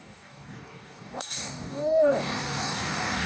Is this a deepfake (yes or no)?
yes